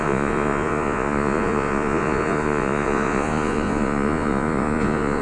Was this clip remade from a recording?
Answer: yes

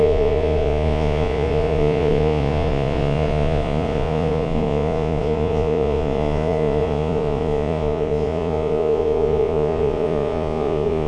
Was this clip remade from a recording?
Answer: yes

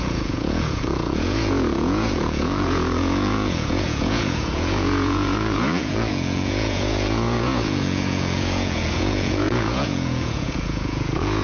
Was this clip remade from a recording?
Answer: yes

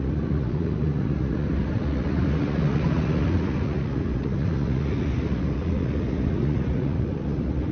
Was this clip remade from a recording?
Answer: yes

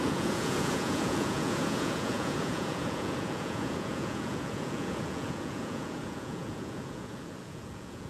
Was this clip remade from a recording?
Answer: yes